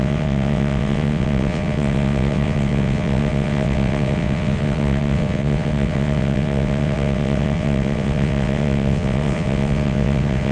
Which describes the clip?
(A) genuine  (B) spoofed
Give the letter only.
B